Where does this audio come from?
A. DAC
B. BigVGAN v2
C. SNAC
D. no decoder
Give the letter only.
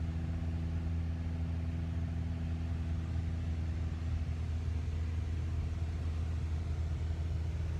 D